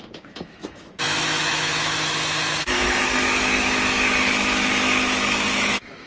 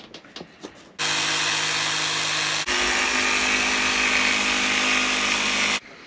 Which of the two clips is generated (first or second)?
first